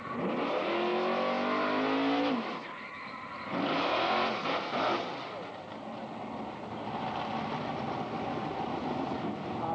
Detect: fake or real real